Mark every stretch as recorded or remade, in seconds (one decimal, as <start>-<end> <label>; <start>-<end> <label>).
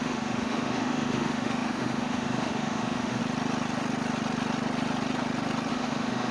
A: 0.0-3.2 remade; 3.2-5.7 recorded; 5.7-6.3 remade